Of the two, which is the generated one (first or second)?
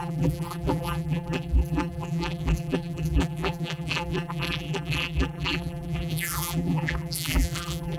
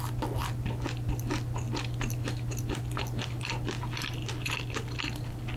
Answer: first